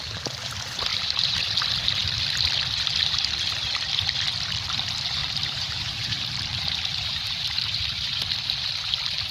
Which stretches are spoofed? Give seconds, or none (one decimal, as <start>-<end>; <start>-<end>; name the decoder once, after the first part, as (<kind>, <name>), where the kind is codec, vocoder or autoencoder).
0.9-1.5 (vocoder, BigVGAN v2); 5.2-8.2